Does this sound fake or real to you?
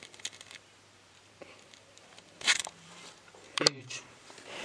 fake